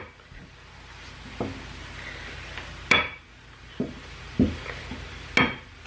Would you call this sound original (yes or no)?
yes